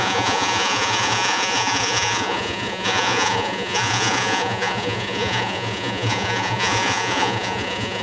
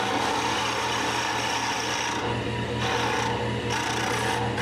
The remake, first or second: first